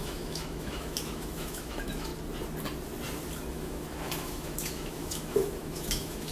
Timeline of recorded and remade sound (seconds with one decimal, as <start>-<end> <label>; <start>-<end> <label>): 0.0-2.1 remade; 2.1-3.5 recorded; 3.5-6.3 remade